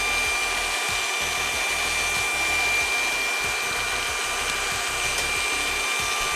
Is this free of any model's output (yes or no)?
yes